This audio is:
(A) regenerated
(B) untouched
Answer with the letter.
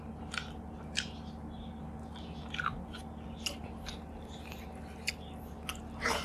B